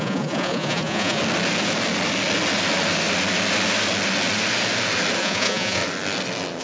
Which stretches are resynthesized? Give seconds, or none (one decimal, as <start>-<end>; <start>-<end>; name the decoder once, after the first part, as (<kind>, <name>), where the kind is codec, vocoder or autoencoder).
0.0-1.2 (vocoder, Vocos); 5.2-5.8